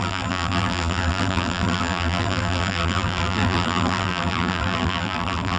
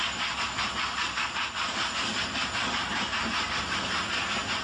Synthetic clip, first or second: first